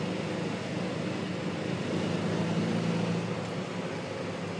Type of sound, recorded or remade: recorded